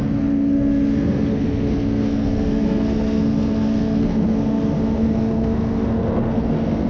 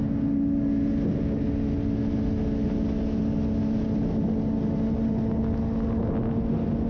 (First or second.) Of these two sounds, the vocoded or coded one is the first